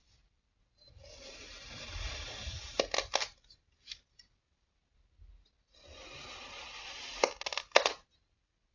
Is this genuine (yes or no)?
yes